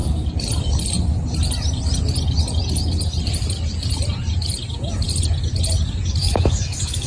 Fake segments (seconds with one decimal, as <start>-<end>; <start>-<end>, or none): 6.2-7.1